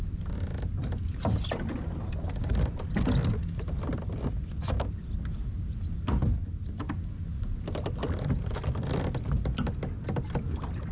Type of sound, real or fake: real